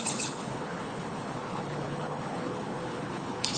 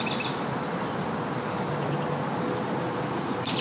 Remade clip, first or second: first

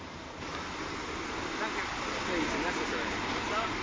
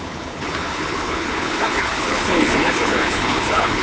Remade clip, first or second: second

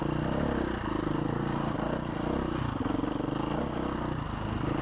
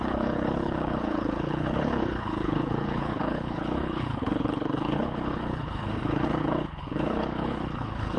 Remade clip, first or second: second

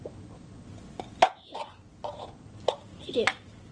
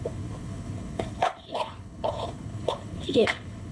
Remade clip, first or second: second